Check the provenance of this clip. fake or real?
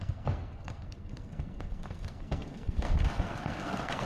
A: fake